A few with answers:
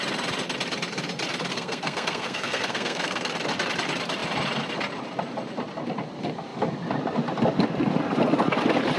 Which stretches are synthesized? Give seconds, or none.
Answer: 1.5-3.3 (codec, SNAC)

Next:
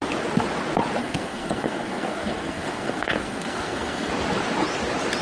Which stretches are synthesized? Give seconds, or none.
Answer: 1.0-4.1 (codec, SNAC)

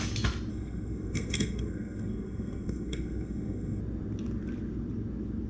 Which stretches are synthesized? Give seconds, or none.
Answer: 0.5-3.8 (codec, SNAC)

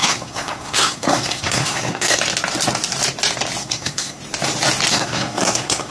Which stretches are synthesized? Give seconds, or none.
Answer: 0.0-2.2 (codec, SNAC); 3.6-4.2; 4.9-5.9